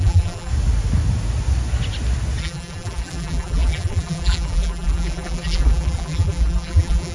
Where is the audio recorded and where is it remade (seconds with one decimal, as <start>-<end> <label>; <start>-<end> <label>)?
0.0-0.5 remade; 0.5-2.4 recorded; 2.4-7.1 remade